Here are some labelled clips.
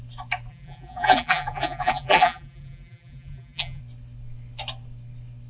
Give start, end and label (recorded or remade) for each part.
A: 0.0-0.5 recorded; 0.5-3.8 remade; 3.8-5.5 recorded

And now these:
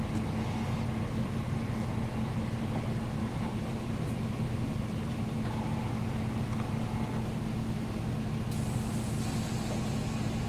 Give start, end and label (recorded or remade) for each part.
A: 0.0-3.2 recorded; 3.2-5.2 remade; 5.2-10.5 recorded

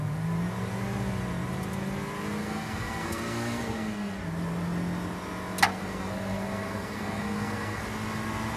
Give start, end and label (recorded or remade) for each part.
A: 0.0-2.4 recorded; 2.4-4.2 remade; 4.2-5.7 recorded; 5.7-7.8 remade; 7.8-8.6 recorded

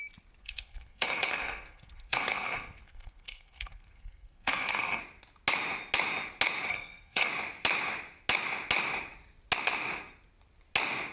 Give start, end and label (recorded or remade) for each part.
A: 0.0-0.4 recorded; 0.4-5.0 remade; 5.0-6.7 recorded; 6.7-7.3 remade; 7.3-11.1 recorded

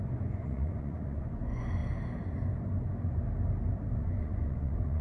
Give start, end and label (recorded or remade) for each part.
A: 0.0-1.8 remade; 1.8-3.9 recorded; 3.9-5.0 remade

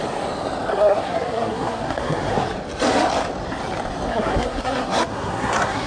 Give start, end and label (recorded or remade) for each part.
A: 0.0-0.7 recorded; 0.7-2.3 remade; 2.3-4.1 recorded; 4.1-5.9 remade

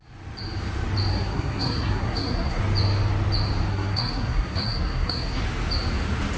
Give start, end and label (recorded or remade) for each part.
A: 0.0-1.1 recorded; 1.1-2.6 remade; 2.6-3.7 recorded; 3.7-5.4 remade; 5.4-6.4 recorded